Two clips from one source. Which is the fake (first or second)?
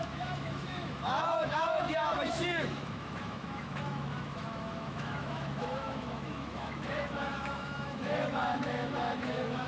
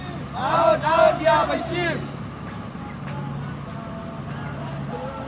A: first